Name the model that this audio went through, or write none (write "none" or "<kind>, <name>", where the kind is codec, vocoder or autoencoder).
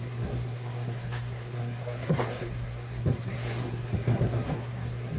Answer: codec, SNAC